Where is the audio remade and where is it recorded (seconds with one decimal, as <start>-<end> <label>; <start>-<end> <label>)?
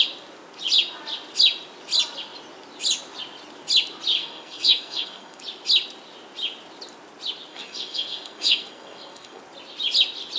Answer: 0.0-4.2 recorded; 4.2-5.4 remade; 5.4-7.5 recorded; 7.5-9.4 remade; 9.4-10.4 recorded